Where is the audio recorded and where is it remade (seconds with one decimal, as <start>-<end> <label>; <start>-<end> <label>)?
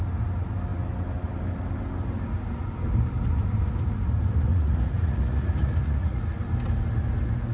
0.0-4.5 recorded; 4.5-6.2 remade; 6.2-7.5 recorded